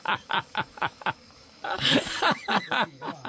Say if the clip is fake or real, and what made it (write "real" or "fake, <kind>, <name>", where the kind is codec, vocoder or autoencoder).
fake, codec, DAC